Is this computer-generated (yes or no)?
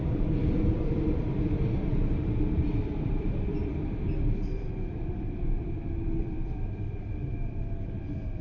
yes